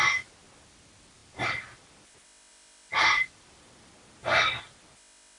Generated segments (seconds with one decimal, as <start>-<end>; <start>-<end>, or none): 1.2-2.1; 2.5-3.9